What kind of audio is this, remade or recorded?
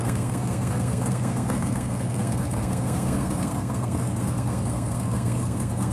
remade